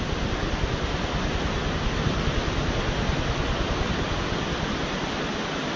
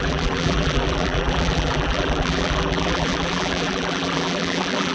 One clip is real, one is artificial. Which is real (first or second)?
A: first